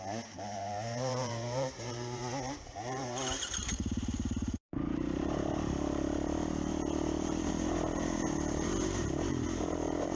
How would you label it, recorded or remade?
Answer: remade